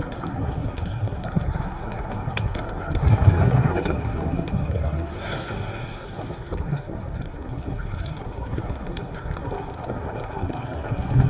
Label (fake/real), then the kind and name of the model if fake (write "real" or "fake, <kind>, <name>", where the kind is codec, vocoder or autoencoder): fake, codec, SNAC